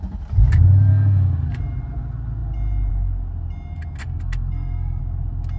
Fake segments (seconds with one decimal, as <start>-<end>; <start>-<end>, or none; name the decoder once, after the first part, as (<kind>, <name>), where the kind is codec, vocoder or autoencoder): 0.9-1.6 (codec, SNAC); 4.0-5.0